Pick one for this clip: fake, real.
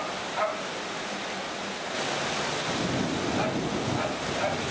real